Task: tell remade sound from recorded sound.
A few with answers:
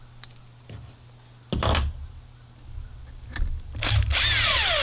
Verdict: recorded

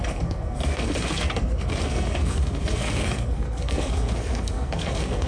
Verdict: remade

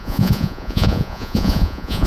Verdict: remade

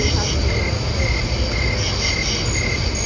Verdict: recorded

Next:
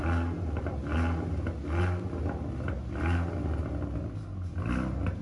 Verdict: recorded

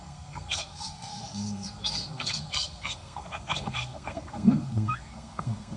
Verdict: remade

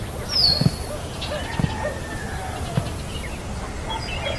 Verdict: recorded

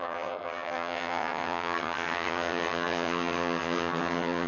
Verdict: remade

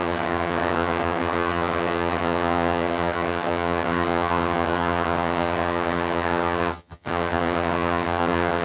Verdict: remade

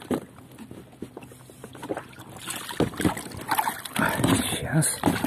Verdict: recorded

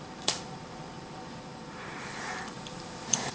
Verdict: remade